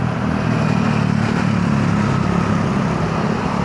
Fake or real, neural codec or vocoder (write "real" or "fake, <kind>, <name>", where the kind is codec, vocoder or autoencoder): real